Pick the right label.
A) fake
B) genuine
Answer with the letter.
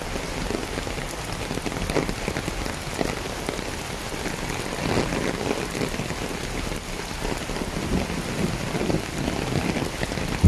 B